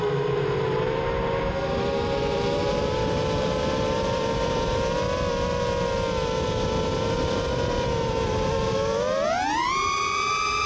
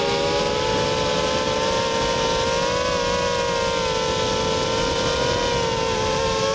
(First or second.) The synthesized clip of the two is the first